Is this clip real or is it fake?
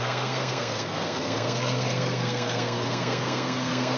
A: fake